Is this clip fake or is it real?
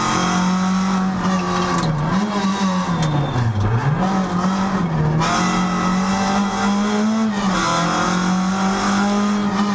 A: real